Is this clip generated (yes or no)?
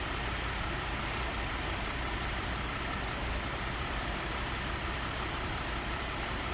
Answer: yes